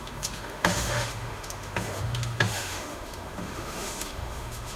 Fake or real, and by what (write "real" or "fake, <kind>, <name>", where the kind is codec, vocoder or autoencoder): fake, autoencoder, DAC-VAE